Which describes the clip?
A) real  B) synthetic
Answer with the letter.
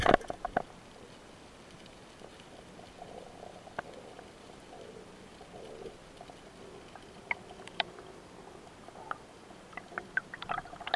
A